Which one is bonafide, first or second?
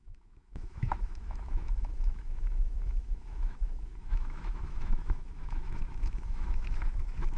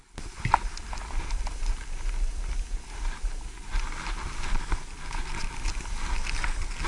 second